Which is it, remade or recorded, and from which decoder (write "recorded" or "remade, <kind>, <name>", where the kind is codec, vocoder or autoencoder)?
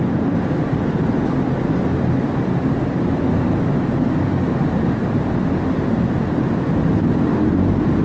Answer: recorded